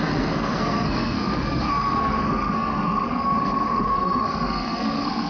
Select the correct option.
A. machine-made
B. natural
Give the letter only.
A